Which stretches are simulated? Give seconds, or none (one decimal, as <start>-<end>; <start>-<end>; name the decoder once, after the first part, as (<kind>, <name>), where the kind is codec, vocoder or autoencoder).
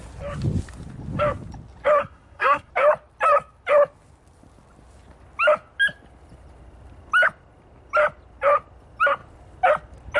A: 2.0-2.7 (codec, SNAC)